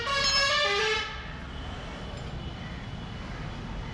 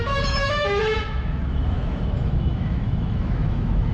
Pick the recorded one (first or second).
first